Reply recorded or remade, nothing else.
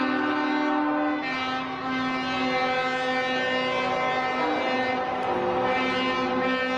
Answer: recorded